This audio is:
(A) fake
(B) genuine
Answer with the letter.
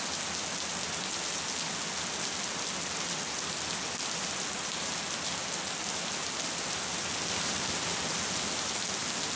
B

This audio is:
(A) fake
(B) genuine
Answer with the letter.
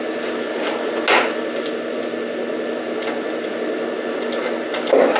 B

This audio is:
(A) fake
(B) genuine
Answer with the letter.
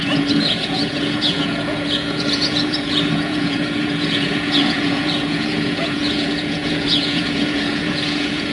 A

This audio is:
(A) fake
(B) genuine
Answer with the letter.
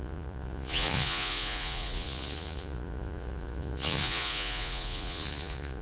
A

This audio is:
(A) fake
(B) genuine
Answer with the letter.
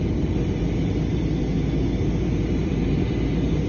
B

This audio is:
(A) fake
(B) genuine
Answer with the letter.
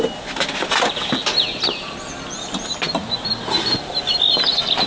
B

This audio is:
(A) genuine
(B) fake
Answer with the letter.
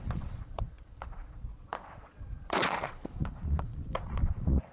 B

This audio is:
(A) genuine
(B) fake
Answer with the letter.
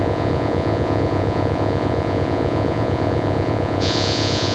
B